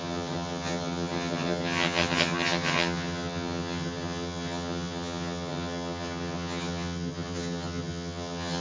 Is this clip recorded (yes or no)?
no